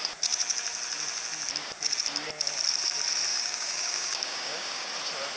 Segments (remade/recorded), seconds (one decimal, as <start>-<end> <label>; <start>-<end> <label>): 0.0-3.3 recorded; 3.3-4.9 remade; 4.9-5.4 recorded